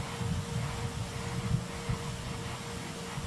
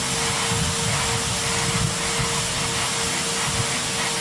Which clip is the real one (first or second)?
second